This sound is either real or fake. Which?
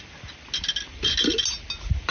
real